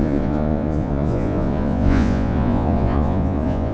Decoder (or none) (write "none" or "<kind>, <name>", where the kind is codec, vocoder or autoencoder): vocoder, Vocos